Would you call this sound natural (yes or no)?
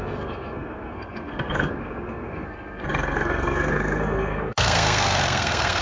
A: no